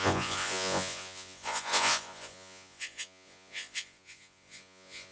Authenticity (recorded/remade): remade